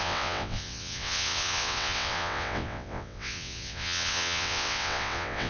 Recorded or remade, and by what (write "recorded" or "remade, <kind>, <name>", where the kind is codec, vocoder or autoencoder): remade, vocoder, WaveNeXt